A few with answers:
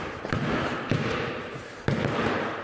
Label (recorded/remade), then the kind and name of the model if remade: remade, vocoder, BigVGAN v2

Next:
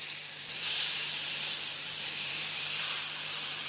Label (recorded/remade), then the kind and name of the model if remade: remade, vocoder, BigVGAN v2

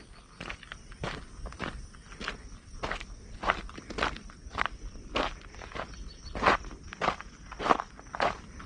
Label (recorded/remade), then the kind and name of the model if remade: remade, vocoder, BigVGAN v2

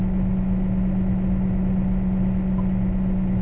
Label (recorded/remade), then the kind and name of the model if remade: recorded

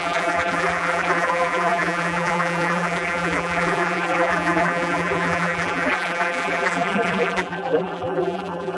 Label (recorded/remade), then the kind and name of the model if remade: remade, vocoder, BigVGAN v2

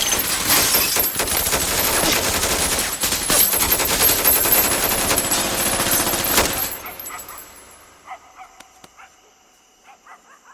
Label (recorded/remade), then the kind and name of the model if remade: recorded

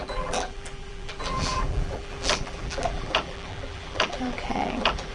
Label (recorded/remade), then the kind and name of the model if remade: remade, vocoder, BigVGAN v2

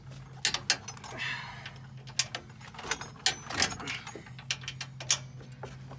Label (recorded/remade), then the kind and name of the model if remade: recorded